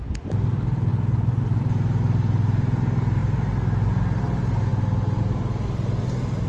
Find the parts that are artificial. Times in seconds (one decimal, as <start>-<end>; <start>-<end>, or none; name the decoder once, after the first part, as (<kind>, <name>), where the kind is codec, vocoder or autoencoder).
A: none